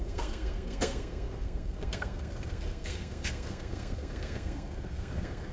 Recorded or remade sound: remade